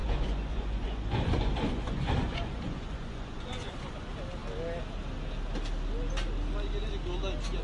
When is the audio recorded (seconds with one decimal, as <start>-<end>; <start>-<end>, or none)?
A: 4.0-7.6